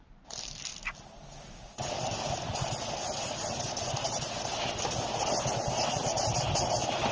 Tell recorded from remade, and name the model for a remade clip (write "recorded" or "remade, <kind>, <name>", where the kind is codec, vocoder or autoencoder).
recorded